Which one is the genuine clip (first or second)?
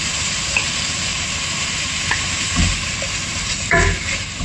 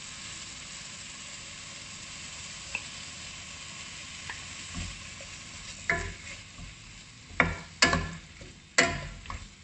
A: second